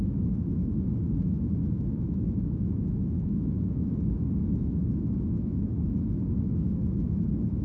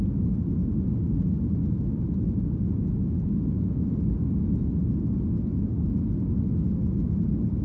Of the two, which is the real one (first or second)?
second